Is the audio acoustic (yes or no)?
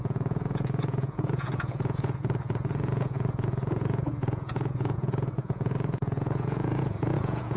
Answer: no